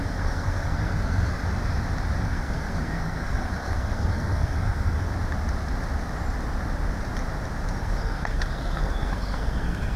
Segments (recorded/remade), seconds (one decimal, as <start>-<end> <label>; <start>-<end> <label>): 0.0-1.4 remade; 1.4-2.2 recorded; 2.2-5.1 remade; 5.1-7.8 recorded; 7.8-10.0 remade